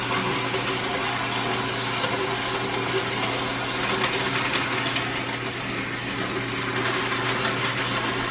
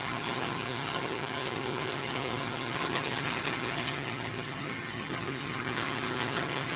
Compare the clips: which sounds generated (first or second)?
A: second